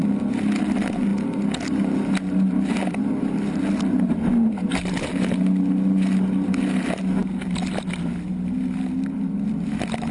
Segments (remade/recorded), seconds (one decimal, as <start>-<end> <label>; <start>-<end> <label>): 0.0-10.1 recorded